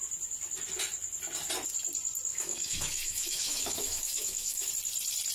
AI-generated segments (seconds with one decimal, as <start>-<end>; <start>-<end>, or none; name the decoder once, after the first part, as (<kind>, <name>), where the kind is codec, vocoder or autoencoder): 2.3-4.7 (autoencoder, DAC-VAE)